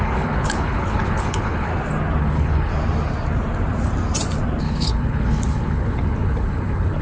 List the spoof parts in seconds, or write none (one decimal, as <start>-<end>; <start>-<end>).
0.0-1.7; 2.2-2.7; 4.6-7.0